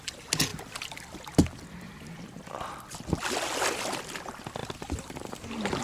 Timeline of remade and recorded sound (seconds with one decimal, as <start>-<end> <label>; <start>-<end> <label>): 0.0-5.8 recorded